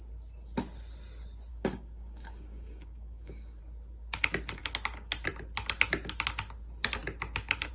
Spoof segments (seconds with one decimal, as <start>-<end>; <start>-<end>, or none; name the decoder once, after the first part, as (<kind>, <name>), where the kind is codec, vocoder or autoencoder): 1.5-3.6 (codec, DAC)